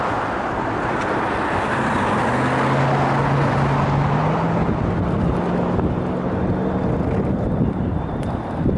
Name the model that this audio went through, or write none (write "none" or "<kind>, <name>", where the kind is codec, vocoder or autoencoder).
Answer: none